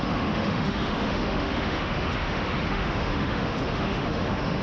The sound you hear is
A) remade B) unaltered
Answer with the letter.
A